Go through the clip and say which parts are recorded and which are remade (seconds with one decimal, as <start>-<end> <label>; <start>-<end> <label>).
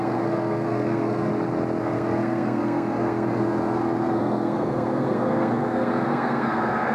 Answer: 0.0-1.3 remade; 1.3-1.8 recorded; 1.8-6.9 remade